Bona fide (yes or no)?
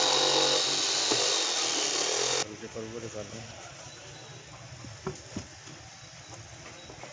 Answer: yes